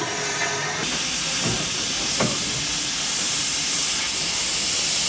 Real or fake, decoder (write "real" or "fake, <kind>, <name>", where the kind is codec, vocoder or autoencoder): real